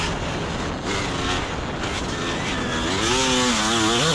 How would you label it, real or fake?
real